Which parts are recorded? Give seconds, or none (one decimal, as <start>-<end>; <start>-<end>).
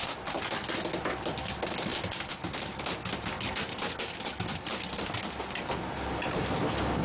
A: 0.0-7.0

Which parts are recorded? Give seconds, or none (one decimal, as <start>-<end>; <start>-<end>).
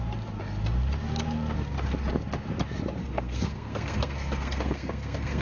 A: 0.0-3.0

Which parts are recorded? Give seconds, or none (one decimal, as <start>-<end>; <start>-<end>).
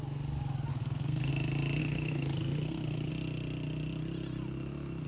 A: 0.0-0.7; 1.3-1.8; 3.1-5.1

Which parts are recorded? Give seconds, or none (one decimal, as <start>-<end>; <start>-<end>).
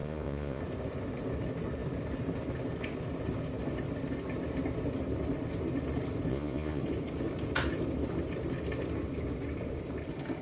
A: 0.6-6.3; 6.8-10.4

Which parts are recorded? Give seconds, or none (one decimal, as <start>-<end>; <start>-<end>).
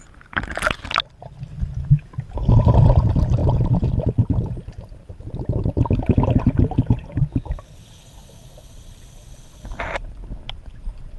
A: 0.0-11.2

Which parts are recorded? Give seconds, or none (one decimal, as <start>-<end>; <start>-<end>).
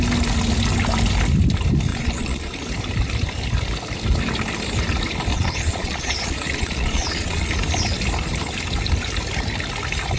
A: 0.0-1.9; 2.6-5.3; 7.5-10.2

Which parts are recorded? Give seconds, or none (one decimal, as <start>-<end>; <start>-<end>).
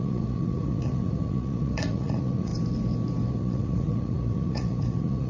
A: 2.5-3.3